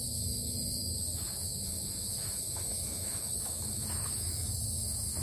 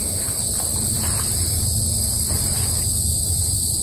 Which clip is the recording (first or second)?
second